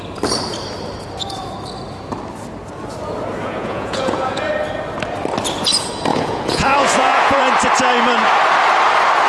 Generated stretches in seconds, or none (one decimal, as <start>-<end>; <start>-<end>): 3.4-4.4; 6.1-7.4